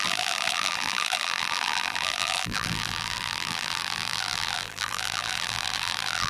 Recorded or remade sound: remade